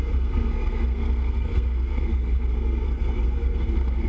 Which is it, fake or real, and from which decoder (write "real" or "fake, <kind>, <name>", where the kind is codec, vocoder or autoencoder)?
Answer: fake, codec, SNAC